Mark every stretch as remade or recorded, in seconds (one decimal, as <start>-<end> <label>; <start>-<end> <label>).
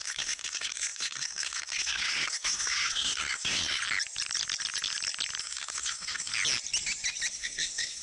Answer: 0.0-3.8 remade; 3.8-5.4 recorded; 5.4-6.3 remade; 6.3-7.3 recorded; 7.3-8.0 remade